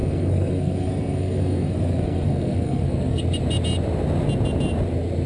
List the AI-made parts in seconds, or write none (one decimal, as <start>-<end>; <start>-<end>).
0.0-3.2